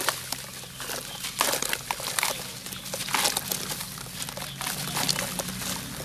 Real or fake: real